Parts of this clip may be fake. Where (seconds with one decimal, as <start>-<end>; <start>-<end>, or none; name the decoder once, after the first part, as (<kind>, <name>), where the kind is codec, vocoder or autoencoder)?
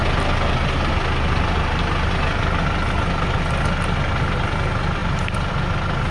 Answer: none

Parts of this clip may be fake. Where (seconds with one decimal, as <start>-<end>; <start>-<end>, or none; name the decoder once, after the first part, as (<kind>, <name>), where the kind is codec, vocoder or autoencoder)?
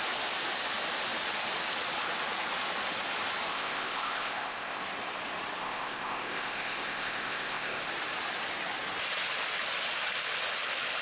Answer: 3.5-4.8 (codec, ZipCodec); 5.6-7.9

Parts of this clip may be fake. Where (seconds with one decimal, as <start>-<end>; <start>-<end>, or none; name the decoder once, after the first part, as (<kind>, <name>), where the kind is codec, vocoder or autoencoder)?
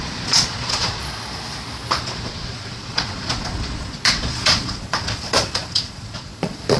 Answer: 0.0-1.0 (vocoder, Vocos); 2.0-6.8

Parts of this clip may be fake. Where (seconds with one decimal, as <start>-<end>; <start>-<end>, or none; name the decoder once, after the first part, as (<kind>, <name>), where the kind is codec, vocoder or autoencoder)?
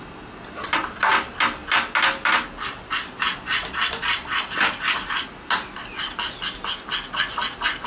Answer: none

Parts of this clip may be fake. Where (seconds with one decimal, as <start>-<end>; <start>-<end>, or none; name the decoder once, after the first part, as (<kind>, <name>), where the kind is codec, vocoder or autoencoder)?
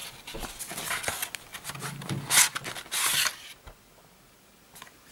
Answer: none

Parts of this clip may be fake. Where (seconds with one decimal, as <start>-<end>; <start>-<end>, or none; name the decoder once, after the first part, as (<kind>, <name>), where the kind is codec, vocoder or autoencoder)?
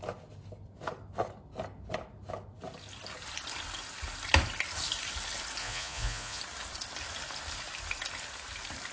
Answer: 5.6-6.4 (vocoder, Vocos)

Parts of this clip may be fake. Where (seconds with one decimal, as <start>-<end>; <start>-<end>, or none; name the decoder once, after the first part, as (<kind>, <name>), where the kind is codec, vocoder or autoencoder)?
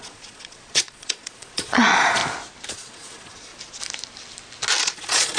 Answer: 0.0-2.2 (vocoder, Vocos); 2.7-3.5; 4.8-5.4